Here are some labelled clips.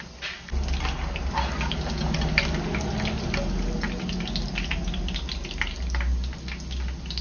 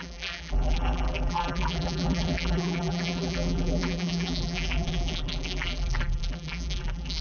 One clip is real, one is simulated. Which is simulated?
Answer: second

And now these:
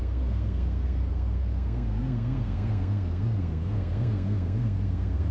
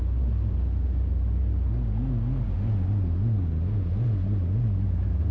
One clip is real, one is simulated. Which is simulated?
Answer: first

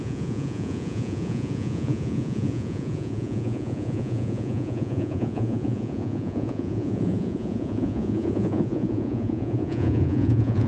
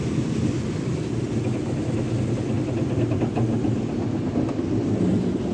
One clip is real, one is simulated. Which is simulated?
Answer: first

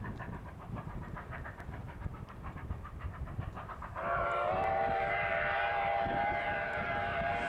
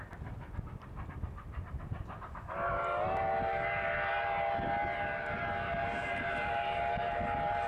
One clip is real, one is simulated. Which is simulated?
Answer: first